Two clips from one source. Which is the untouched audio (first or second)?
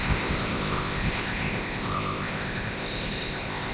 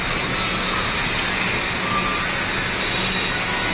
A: second